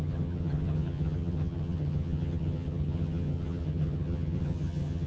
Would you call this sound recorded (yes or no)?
no